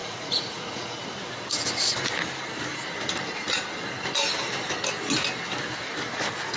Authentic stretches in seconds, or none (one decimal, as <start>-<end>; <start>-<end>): 1.0-6.6